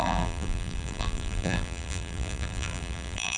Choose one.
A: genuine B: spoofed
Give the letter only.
B